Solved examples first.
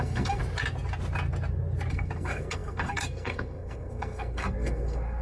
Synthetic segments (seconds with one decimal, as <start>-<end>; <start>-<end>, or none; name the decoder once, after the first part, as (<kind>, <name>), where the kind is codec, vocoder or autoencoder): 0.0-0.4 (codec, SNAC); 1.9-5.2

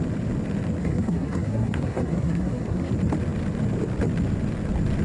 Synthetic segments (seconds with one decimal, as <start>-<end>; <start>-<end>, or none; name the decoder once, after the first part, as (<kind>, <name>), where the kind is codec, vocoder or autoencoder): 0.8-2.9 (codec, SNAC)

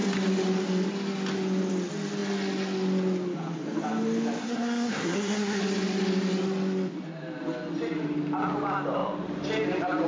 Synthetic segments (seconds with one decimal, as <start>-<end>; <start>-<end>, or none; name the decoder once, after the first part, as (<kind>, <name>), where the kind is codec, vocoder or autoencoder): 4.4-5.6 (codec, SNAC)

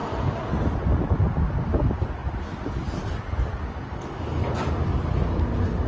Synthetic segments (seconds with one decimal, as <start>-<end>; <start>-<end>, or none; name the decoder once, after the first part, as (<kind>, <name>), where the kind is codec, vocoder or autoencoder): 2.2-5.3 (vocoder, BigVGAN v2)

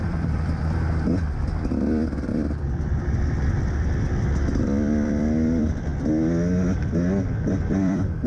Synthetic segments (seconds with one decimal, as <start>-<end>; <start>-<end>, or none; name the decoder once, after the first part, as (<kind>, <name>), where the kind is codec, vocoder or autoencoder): 0.0-5.9 (vocoder, BigVGAN v2); 7.7-8.3

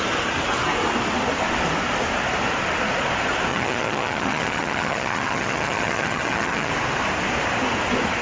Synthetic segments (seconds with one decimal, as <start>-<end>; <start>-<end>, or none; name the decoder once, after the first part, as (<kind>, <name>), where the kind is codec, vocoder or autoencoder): 3.5-6.7 (vocoder, HiFi-GAN)